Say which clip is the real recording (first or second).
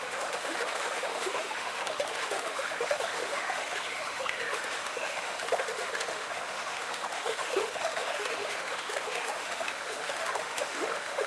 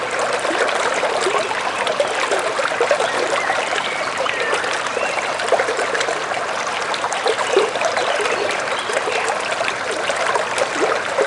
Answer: second